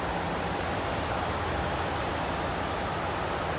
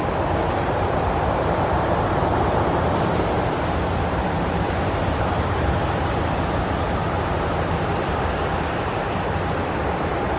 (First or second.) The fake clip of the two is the second